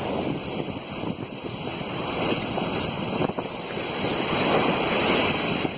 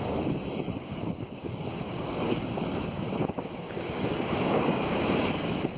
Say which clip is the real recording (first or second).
first